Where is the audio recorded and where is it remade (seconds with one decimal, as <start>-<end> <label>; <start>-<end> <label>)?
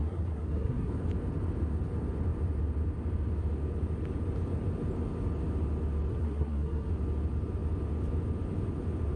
0.0-0.9 remade; 0.9-6.1 recorded; 6.1-6.9 remade; 6.9-9.2 recorded